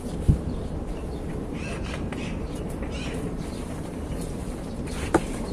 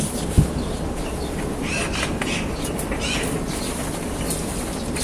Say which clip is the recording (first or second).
second